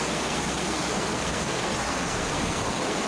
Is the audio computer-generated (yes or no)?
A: yes